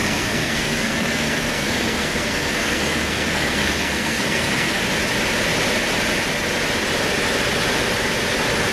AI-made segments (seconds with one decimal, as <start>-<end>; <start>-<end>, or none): 0.0-4.8